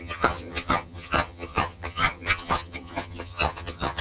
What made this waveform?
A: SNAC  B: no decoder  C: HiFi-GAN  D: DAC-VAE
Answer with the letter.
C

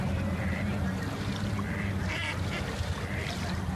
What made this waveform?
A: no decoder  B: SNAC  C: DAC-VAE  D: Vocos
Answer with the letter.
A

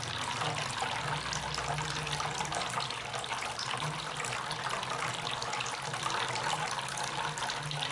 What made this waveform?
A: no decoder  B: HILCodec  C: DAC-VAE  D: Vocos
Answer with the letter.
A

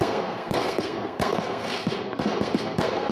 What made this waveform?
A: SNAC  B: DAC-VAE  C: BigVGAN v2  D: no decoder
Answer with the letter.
A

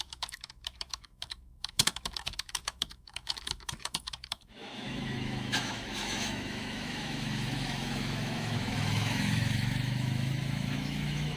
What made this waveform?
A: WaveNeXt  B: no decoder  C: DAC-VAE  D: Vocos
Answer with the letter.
C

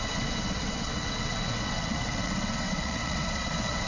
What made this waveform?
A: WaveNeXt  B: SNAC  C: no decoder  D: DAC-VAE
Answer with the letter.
A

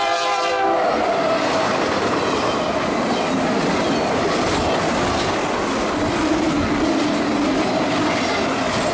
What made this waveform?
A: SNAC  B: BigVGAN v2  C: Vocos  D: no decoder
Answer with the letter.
B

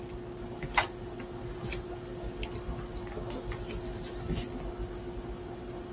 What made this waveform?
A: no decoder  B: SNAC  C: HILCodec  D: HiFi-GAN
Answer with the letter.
A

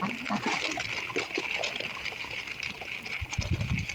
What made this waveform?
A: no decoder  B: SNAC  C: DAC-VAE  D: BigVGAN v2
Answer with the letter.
A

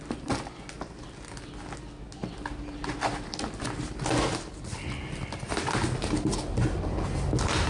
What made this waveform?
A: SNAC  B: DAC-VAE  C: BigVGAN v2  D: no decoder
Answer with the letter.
D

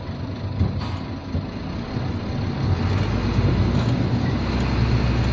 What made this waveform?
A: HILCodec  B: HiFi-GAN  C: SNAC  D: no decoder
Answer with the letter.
D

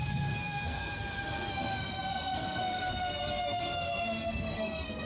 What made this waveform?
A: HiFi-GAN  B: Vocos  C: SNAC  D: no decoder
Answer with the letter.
C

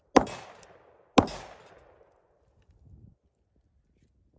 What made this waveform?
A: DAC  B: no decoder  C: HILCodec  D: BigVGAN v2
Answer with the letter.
B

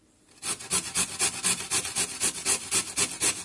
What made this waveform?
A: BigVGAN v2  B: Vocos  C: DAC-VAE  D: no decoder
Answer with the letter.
D